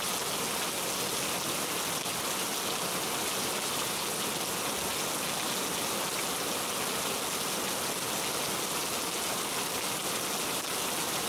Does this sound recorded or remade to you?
recorded